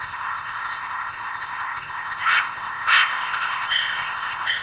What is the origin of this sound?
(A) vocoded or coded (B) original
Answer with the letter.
A